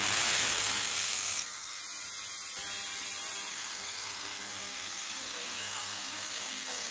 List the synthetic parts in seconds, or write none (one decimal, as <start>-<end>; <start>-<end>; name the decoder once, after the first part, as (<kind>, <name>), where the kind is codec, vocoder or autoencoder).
0.0-1.8 (codec, SNAC); 3.5-6.9